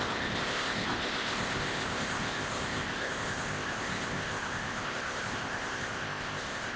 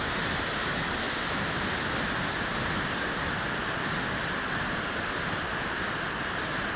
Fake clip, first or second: first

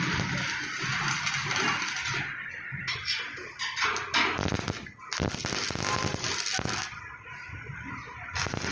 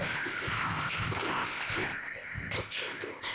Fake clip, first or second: second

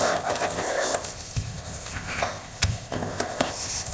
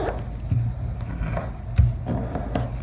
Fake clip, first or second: first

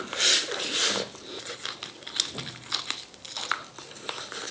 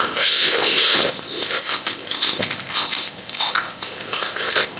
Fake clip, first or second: second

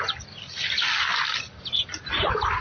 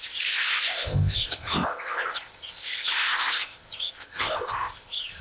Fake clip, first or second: second